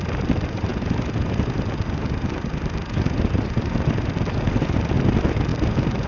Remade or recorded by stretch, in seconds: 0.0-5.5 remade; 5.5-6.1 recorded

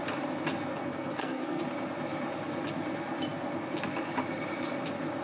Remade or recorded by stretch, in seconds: 0.0-0.8 recorded; 0.8-1.6 remade; 1.6-5.2 recorded

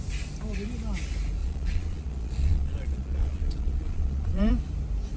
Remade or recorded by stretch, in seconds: 0.0-1.4 recorded; 1.4-4.5 remade; 4.5-5.2 recorded

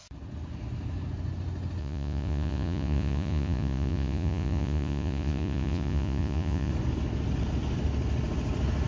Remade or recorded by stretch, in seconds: 0.0-1.8 recorded; 1.8-6.7 remade; 6.7-8.9 recorded

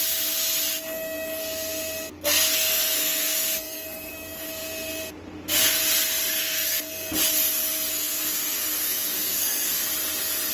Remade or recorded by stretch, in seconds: 0.0-2.1 recorded; 2.1-4.1 remade; 4.1-6.4 recorded; 6.4-7.1 remade; 7.1-7.9 recorded; 7.9-9.8 remade; 9.8-10.5 recorded

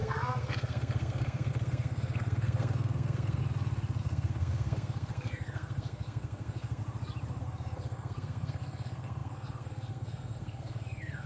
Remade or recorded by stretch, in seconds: 0.0-3.4 remade; 3.4-4.0 recorded; 4.0-6.8 remade; 6.8-7.4 recorded; 7.4-11.3 remade